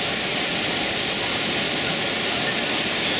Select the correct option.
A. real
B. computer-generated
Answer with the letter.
A